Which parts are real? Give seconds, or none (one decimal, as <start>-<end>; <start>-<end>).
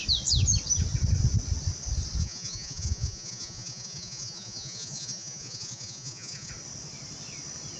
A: 0.0-2.2; 6.5-7.8